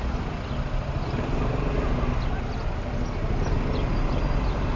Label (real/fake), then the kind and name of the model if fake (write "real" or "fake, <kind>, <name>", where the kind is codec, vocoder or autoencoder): real